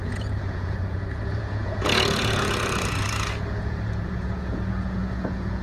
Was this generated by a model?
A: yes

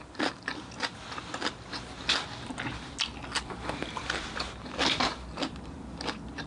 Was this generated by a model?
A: no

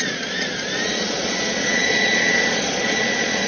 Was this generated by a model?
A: yes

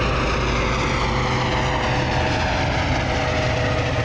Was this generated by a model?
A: no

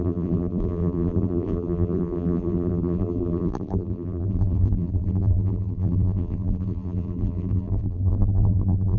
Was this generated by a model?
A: yes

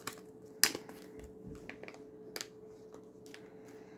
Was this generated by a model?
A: no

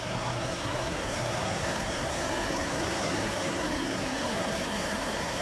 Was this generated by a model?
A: yes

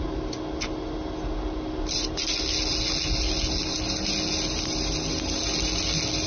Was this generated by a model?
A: no